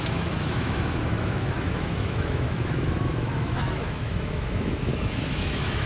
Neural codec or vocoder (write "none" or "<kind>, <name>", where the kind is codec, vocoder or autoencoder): autoencoder, DAC-VAE